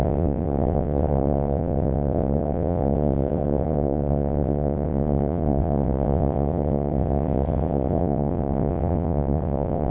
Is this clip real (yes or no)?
no